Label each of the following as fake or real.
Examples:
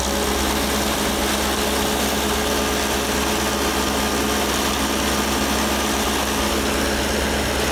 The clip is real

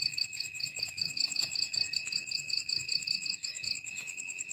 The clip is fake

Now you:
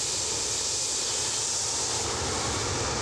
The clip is real